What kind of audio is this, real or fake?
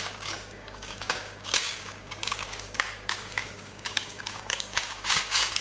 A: fake